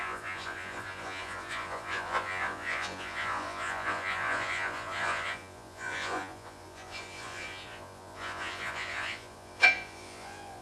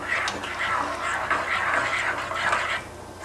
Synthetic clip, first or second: first